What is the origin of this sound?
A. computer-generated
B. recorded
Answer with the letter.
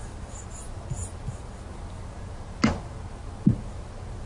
B